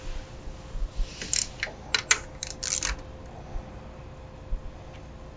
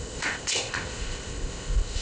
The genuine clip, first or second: first